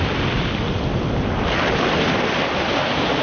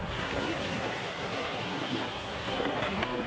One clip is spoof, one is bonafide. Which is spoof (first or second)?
second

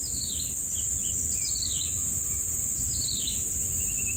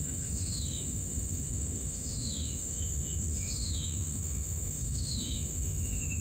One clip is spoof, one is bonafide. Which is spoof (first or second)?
second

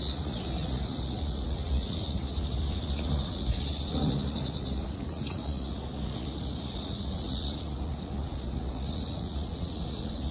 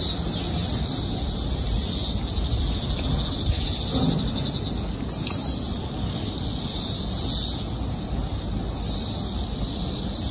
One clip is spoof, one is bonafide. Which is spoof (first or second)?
first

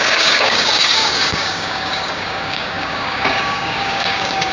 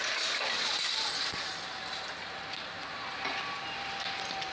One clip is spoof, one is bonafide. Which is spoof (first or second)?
first